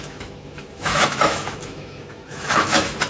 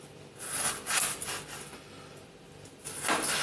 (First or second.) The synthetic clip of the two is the first